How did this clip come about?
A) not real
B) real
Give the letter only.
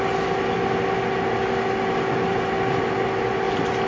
B